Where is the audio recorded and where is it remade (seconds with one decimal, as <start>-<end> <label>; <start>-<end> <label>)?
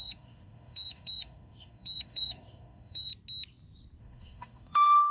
0.0-3.1 remade; 3.1-4.0 recorded; 4.0-5.1 remade